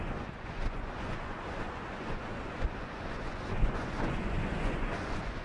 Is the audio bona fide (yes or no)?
no